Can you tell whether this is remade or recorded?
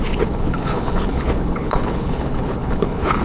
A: remade